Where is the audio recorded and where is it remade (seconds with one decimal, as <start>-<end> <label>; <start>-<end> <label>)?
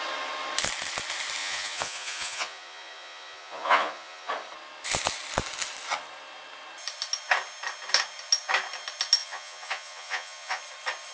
0.0-1.4 recorded; 1.4-4.3 remade; 4.3-9.2 recorded; 9.2-10.6 remade; 10.6-11.1 recorded